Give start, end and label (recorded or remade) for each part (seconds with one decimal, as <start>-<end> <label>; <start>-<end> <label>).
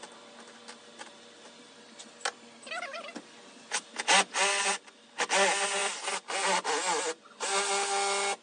0.0-8.4 recorded